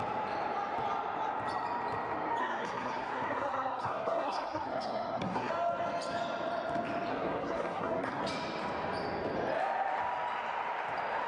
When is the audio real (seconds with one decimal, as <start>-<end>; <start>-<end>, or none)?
0.0-2.4; 5.5-7.1; 8.2-11.3